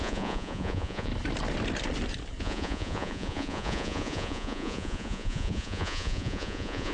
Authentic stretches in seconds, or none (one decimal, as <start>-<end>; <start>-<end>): 1.1-2.4